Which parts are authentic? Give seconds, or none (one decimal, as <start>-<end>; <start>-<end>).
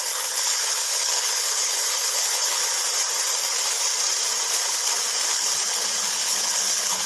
2.6-5.3